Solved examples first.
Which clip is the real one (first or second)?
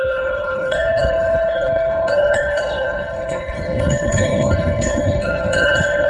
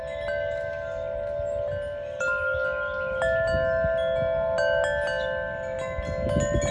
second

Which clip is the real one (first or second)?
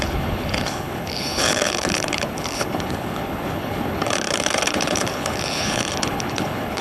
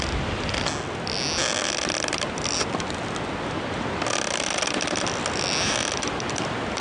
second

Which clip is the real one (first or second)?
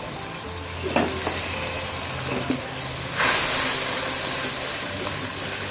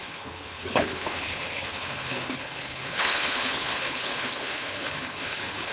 first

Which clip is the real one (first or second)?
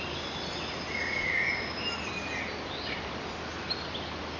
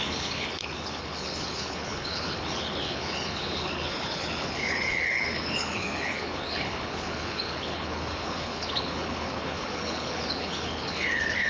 first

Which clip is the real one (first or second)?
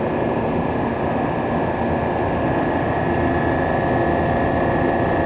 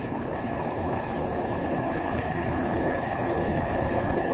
first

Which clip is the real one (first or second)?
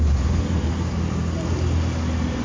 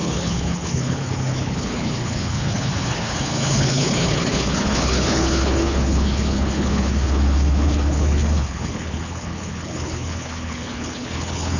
first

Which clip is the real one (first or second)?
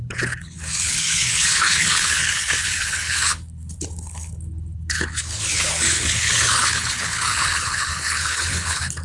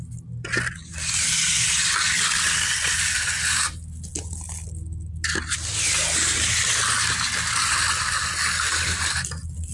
second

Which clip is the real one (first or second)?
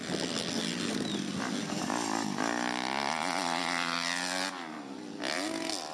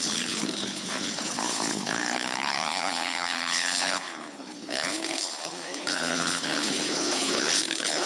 first